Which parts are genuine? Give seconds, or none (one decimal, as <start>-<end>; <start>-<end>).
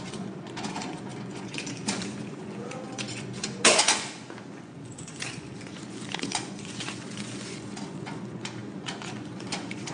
none